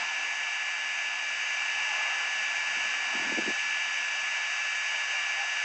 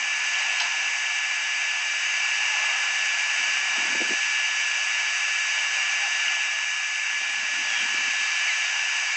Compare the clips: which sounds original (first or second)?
first